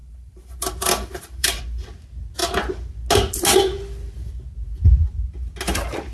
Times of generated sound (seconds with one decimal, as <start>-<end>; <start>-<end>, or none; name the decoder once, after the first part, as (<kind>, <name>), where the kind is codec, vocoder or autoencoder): 0.0-1.6 (vocoder, BigVGAN v2)